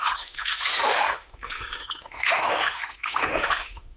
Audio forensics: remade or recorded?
remade